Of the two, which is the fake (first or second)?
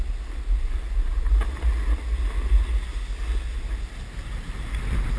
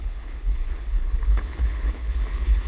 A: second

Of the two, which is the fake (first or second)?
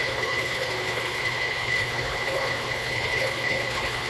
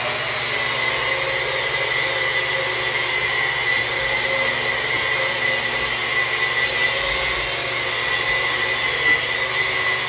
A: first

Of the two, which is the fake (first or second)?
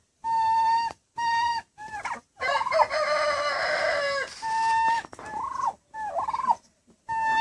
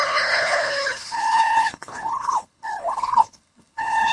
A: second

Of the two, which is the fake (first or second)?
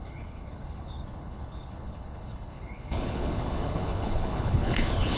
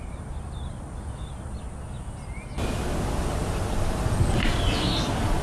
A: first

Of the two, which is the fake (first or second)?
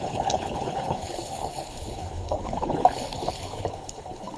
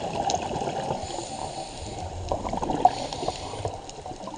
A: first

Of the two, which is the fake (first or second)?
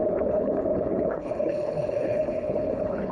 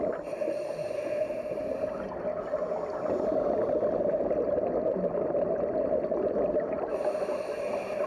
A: first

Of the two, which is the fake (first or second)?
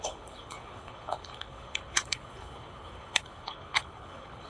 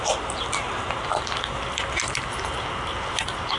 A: first